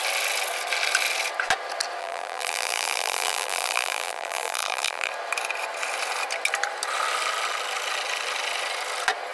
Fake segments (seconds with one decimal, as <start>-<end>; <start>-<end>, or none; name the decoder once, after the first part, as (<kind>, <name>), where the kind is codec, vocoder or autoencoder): 2.0-5.1 (vocoder, BigVGAN v2)